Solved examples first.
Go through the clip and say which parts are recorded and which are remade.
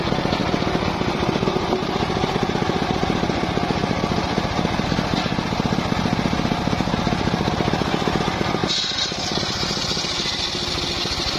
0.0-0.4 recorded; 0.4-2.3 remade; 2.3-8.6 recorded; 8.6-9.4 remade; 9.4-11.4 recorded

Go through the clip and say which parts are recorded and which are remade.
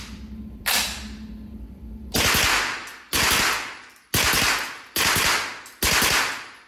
0.0-6.7 recorded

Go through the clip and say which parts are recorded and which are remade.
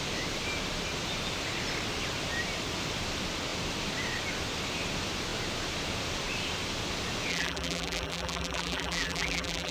0.0-7.3 recorded; 7.3-9.7 remade